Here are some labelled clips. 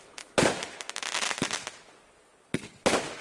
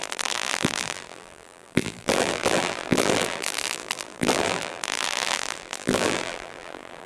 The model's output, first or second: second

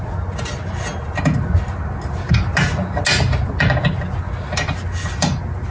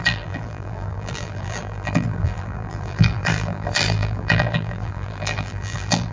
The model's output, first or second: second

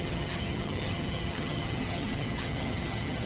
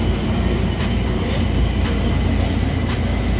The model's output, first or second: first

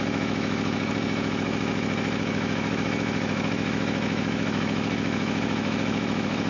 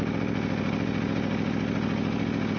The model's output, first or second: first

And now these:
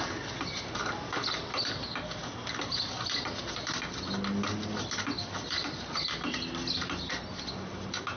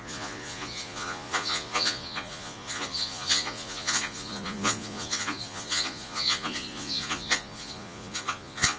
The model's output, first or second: second